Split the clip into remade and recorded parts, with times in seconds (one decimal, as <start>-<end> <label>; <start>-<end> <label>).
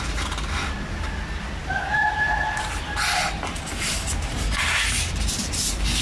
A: 0.0-6.0 recorded